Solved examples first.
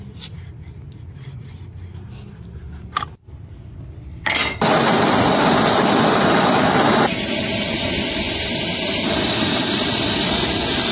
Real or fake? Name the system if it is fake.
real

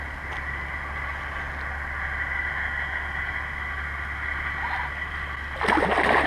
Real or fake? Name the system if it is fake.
real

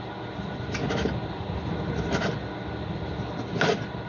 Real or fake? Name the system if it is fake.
real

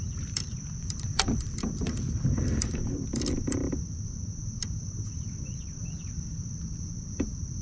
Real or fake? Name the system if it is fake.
fake, vocoder, BigVGAN v2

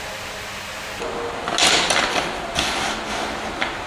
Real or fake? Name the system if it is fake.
real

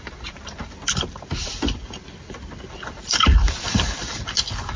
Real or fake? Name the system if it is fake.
fake, vocoder, BigVGAN v2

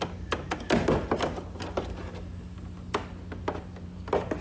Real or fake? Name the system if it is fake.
real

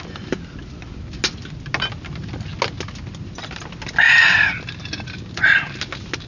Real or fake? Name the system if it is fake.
real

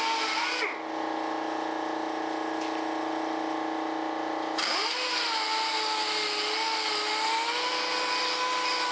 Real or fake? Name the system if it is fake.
real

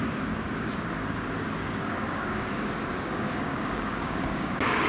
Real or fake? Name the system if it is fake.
fake, codec, DAC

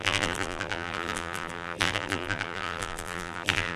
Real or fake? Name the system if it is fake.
fake, vocoder, BigVGAN v2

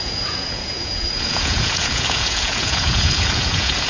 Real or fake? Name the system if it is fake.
fake, vocoder, Vocos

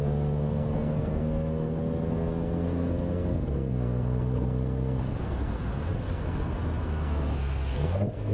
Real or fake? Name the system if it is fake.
fake, codec, SNAC